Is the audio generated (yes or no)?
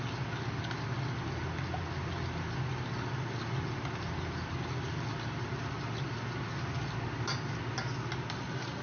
no